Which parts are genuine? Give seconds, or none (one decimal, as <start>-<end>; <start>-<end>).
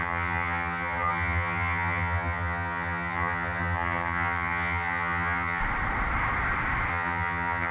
5.6-6.9